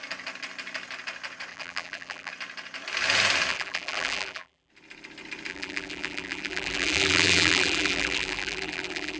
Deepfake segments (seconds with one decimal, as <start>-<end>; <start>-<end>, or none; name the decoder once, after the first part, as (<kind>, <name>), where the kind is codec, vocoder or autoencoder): 1.5-2.3 (vocoder, BigVGAN v2); 3.5-4.7; 5.5-9.2